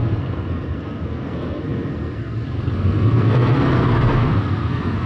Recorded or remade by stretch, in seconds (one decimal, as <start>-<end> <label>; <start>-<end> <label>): 0.0-5.1 remade

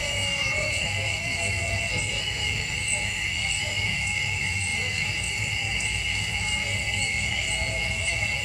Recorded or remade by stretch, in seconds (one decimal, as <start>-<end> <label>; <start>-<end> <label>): 0.0-8.4 remade

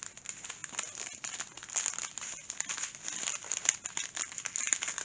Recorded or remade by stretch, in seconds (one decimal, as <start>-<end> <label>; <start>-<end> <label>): 0.0-5.0 recorded

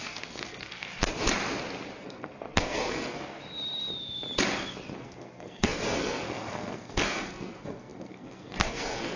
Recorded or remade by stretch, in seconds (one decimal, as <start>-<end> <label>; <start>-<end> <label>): 0.0-1.0 remade; 1.0-2.0 recorded; 2.0-3.4 remade; 3.4-5.0 recorded; 5.0-9.2 remade

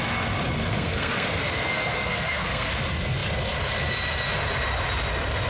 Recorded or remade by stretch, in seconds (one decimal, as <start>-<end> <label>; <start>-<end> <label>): 0.0-0.7 recorded; 0.7-2.7 remade; 2.7-5.5 recorded

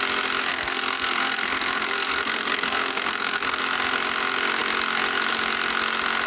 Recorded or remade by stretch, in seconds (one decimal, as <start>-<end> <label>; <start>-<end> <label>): 0.0-0.5 recorded; 0.5-3.6 remade; 3.6-6.3 recorded